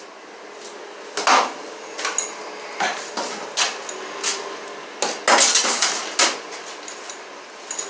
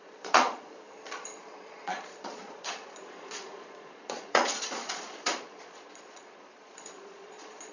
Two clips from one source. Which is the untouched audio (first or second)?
first